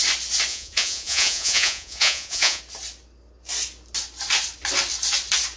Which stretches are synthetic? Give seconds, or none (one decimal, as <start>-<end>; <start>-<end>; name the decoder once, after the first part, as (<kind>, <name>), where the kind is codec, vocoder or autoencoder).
0.5-2.6 (vocoder, Vocos)